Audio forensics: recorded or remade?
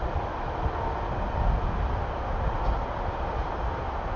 recorded